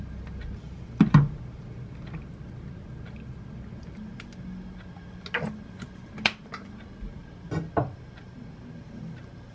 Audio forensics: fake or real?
real